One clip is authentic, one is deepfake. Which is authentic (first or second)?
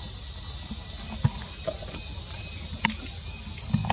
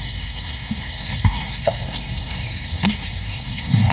first